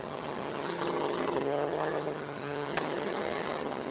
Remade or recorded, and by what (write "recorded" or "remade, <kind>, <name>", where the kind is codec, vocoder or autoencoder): remade, vocoder, HiFi-GAN